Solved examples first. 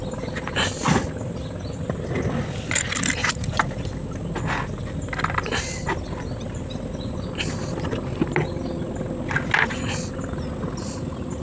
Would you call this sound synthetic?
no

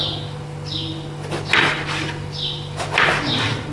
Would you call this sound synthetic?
no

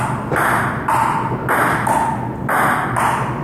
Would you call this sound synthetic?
no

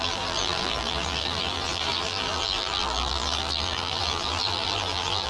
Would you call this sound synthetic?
yes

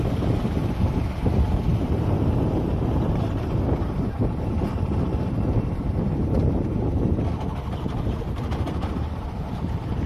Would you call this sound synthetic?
yes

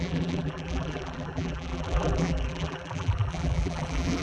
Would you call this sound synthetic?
yes